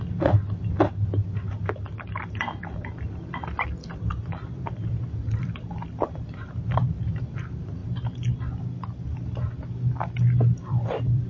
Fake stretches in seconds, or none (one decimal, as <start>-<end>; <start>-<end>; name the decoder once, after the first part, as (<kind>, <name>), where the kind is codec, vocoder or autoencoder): 0.0-7.8 (vocoder, BigVGAN v2); 10.4-11.3